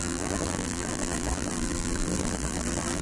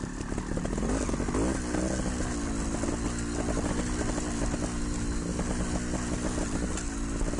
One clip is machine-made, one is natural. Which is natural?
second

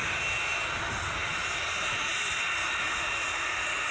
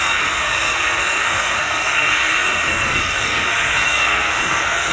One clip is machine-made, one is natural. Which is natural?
first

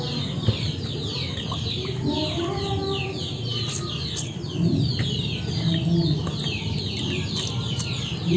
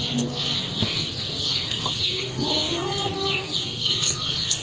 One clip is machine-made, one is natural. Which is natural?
first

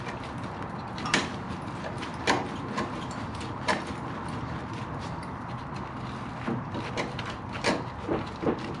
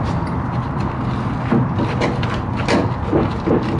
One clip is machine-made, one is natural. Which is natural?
second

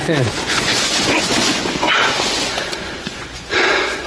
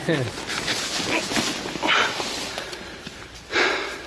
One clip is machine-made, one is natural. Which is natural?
second